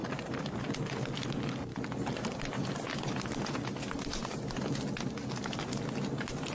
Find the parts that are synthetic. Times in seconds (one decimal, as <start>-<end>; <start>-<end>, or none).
none